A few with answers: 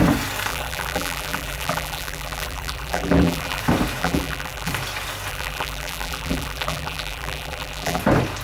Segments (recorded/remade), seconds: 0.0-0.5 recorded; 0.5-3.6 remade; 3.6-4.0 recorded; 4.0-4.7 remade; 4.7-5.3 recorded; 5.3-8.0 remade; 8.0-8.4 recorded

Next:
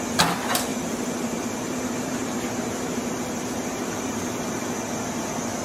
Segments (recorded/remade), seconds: 0.0-0.7 recorded; 0.7-4.1 remade; 4.1-5.6 recorded